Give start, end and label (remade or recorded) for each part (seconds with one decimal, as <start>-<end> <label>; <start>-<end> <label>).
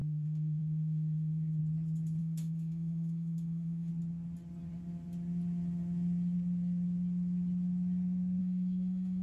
0.0-1.6 remade; 1.6-2.2 recorded; 2.2-3.9 remade; 3.9-8.4 recorded; 8.4-9.2 remade